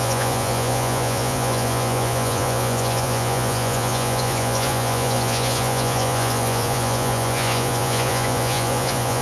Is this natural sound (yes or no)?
no